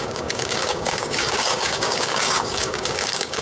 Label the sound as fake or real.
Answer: fake